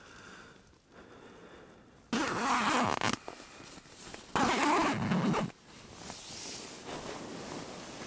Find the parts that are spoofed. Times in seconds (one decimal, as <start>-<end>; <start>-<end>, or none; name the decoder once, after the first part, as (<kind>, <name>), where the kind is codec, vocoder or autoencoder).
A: none